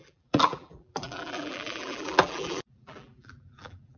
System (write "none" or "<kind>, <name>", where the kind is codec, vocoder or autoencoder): vocoder, BigVGAN v2